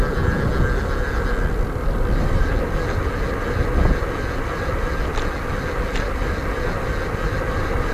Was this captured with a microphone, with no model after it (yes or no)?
yes